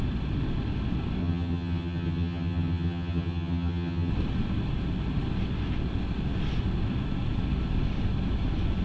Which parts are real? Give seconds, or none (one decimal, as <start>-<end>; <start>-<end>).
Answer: 0.0-1.2; 4.1-8.8